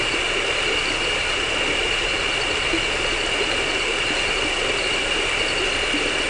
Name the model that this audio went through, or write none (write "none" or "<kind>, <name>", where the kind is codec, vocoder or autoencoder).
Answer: none